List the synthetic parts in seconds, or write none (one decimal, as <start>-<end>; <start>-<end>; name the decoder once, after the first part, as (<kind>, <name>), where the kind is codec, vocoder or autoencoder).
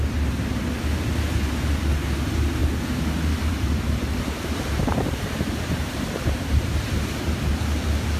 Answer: 2.6-7.5 (vocoder, BigVGAN v2)